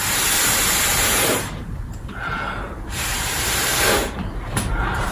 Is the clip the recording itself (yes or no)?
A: no